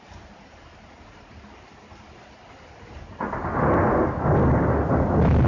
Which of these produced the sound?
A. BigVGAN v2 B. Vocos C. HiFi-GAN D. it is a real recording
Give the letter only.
D